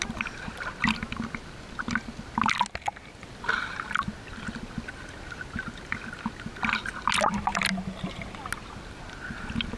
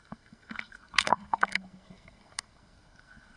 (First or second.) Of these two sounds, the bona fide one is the first